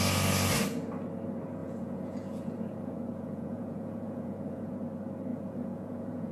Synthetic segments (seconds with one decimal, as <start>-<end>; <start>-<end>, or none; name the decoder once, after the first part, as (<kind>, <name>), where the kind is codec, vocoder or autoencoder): 1.6-4.7 (vocoder, Vocos); 5.3-6.3